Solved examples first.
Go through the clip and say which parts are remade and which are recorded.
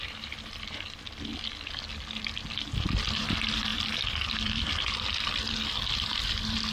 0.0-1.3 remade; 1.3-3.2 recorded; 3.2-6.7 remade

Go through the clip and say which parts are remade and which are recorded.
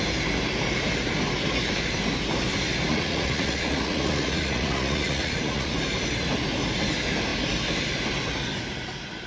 0.0-2.9 recorded; 2.9-5.7 remade; 5.7-9.3 recorded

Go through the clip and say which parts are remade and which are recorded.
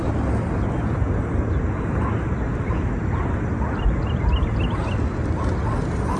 0.0-6.2 recorded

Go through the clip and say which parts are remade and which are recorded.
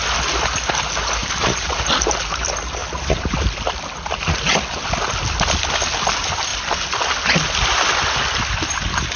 0.0-1.2 recorded; 1.2-1.7 remade; 1.7-2.8 recorded; 2.8-3.3 remade; 3.3-9.2 recorded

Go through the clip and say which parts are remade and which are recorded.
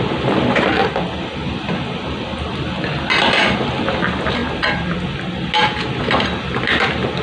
0.0-7.2 recorded